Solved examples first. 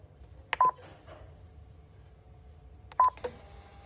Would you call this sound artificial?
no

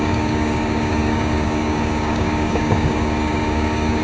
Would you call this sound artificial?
yes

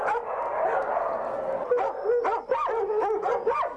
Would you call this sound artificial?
no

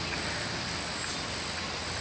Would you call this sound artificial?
no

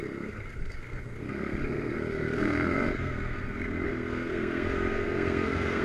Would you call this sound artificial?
yes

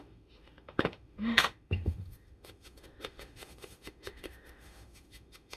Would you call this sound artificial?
yes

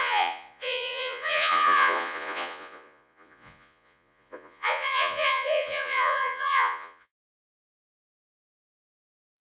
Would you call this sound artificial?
yes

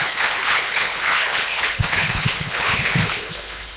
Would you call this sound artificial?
yes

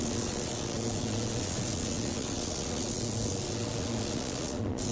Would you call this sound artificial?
yes